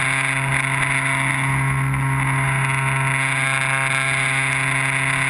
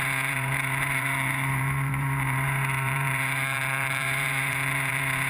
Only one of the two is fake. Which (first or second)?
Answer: second